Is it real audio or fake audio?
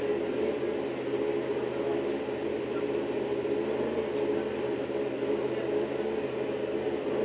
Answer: real